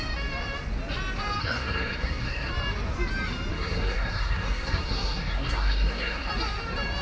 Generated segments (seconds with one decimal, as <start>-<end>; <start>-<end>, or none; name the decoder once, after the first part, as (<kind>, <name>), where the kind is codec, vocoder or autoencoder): 1.4-2.5 (codec, SNAC); 3.5-6.3